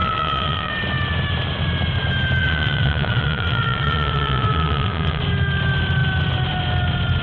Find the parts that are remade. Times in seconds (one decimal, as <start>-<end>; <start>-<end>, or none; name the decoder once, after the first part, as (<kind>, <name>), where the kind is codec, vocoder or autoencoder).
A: 0.0-0.7 (vocoder, WaveNeXt); 2.4-5.2